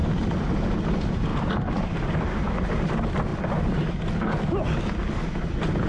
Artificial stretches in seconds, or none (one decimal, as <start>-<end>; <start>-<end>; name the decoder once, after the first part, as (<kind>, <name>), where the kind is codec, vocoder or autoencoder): none